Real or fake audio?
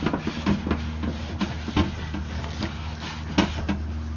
real